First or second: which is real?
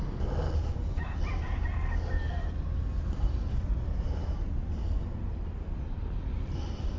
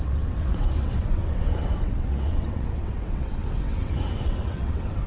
first